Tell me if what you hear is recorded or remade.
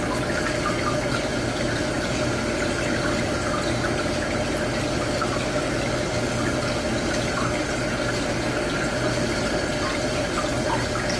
recorded